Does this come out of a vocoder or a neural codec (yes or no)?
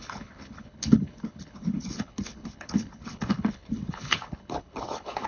yes